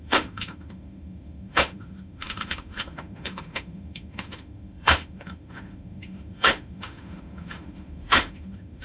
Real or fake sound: fake